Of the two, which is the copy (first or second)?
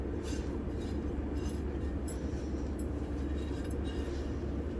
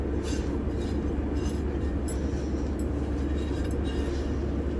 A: first